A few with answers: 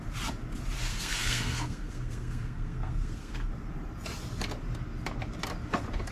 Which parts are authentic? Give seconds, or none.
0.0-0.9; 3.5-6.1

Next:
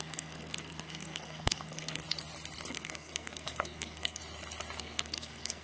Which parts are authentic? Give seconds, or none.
2.0-2.7; 4.2-4.8

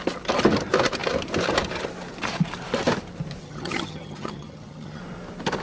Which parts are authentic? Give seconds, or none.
0.0-3.4; 5.0-5.6

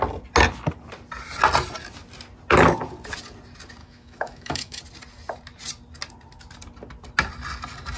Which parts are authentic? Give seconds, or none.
0.0-3.8; 4.8-8.0